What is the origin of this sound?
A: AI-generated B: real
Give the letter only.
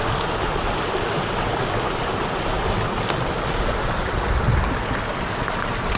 B